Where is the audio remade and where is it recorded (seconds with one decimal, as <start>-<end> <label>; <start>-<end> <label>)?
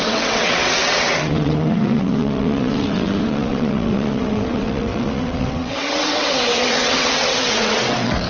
0.0-8.3 remade